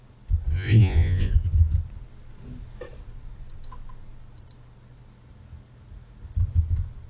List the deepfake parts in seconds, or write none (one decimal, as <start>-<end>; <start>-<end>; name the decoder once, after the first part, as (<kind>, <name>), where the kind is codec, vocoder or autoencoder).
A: 0.5-1.3 (vocoder, Vocos)